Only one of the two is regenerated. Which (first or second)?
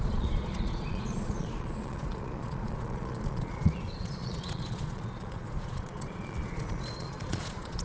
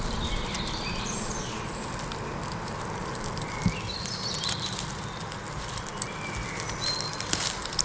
first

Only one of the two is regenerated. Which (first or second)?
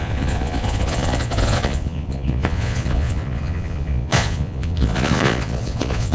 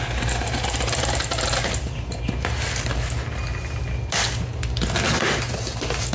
first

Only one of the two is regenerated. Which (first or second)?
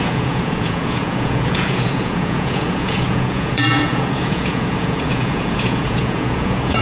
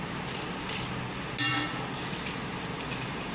first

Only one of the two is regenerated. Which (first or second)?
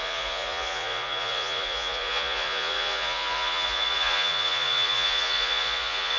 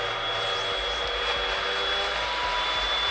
first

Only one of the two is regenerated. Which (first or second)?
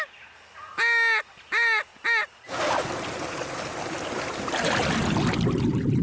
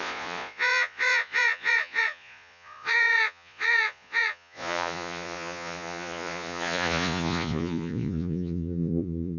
second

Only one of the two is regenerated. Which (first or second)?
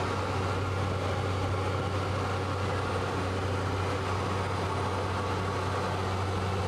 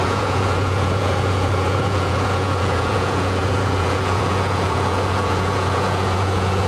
second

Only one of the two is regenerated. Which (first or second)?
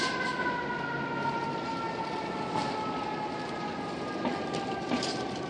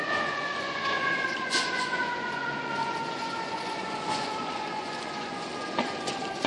second